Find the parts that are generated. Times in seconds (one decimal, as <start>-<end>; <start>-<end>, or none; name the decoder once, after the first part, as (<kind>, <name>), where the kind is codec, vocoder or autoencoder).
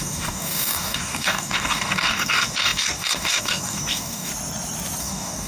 0.0-4.3 (codec, DAC); 5.0-5.5